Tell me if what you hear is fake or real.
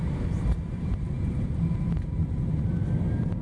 fake